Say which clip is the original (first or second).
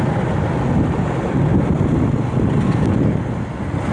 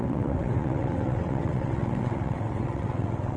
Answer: first